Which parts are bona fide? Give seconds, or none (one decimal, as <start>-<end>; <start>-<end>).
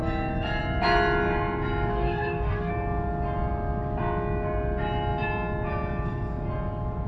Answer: 0.0-1.9; 2.7-7.1